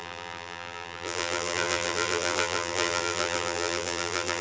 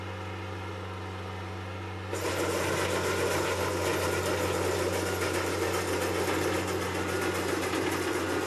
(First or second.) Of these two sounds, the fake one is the first